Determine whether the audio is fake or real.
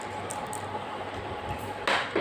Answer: real